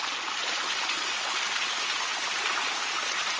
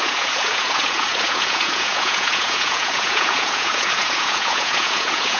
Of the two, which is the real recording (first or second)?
first